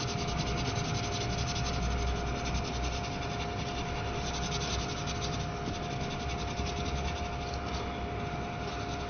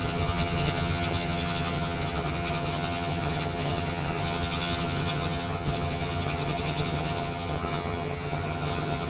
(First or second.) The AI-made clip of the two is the second